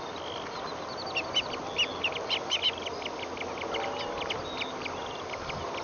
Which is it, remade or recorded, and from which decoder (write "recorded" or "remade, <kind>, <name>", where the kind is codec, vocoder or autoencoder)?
recorded